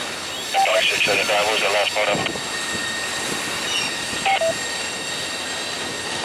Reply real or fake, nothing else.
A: real